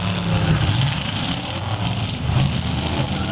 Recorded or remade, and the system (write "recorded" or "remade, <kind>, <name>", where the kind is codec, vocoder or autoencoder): recorded